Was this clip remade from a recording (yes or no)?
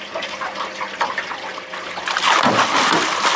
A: no